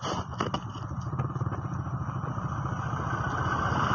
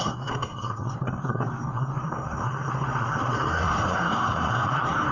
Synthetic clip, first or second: second